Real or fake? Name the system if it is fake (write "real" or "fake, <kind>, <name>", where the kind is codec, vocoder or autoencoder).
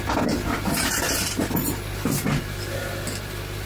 real